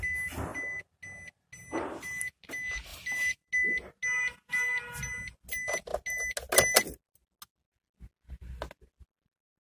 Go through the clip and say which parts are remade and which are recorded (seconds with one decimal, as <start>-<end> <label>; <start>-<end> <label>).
0.0-2.9 recorded; 2.9-3.5 remade; 3.5-9.6 recorded